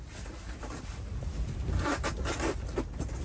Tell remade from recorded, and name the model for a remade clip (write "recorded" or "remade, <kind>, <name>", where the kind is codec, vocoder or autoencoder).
recorded